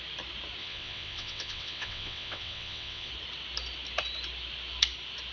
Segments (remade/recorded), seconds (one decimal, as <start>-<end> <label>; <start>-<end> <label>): 0.0-0.6 recorded; 0.6-3.1 remade; 3.1-5.3 recorded